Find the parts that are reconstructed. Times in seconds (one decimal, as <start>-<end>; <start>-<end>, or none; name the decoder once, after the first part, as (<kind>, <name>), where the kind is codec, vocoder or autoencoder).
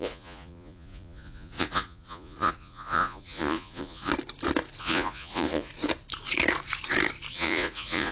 0.0-4.1 (vocoder, Vocos); 4.8-5.7; 7.3-8.1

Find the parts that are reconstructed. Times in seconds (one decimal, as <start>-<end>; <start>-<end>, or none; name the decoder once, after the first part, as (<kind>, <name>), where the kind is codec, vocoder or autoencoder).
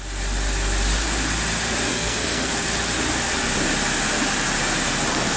1.9-2.5 (codec, SNAC)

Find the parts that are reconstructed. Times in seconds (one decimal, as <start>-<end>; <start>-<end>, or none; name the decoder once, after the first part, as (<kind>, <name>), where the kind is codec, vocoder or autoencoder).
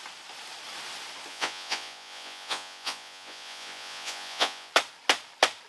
1.3-4.7 (vocoder, Vocos)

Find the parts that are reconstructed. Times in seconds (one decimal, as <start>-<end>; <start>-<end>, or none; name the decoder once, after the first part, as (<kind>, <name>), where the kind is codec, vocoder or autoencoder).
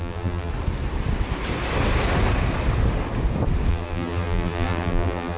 0.0-0.5 (vocoder, BigVGAN v2); 3.7-5.4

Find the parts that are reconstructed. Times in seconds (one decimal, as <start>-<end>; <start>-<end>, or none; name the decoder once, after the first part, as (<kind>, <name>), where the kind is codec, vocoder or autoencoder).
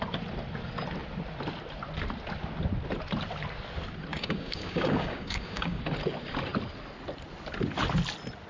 4.1-5.8 (codec, DAC)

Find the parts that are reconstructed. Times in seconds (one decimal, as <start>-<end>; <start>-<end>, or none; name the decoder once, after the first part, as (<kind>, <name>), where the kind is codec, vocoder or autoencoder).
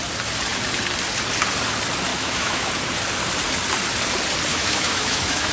2.1-2.7 (autoencoder, DAC-VAE); 4.5-5.5